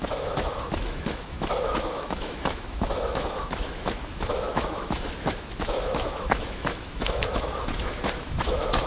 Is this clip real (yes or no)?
no